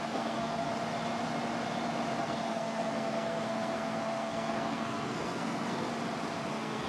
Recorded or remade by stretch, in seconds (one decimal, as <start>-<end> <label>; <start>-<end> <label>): 0.0-0.7 remade; 0.7-2.2 recorded; 2.2-5.9 remade; 5.9-6.5 recorded; 6.5-6.9 remade